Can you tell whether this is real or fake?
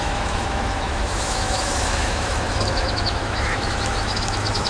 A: fake